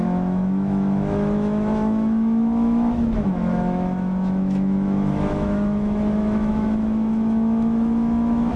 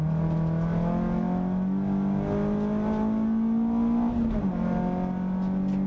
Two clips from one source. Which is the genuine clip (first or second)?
second